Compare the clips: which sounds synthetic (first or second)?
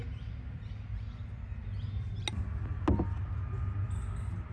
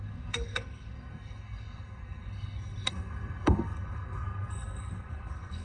second